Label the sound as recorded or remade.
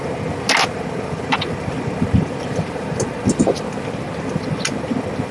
recorded